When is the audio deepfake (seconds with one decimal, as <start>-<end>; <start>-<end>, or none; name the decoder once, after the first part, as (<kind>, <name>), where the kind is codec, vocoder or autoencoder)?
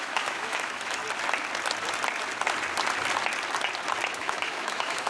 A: 0.0-1.0 (autoencoder, DAC-VAE); 4.1-5.1